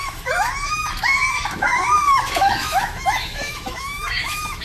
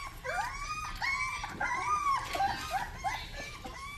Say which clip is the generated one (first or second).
first